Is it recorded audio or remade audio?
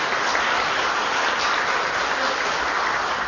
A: recorded